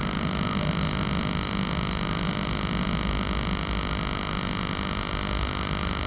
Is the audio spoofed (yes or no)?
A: no